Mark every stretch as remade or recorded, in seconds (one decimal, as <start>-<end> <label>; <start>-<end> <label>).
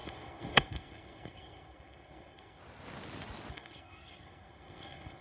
0.0-2.6 remade; 2.6-3.5 recorded; 3.5-5.2 remade